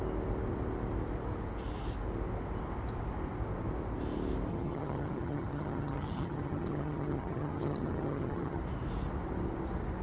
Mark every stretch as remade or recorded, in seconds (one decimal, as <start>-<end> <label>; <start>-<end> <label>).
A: 0.0-4.5 recorded; 4.5-8.6 remade; 8.6-10.0 recorded